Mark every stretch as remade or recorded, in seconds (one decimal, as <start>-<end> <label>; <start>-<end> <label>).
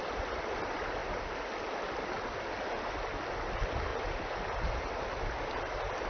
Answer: 0.0-3.9 recorded; 3.9-5.0 remade; 5.0-6.1 recorded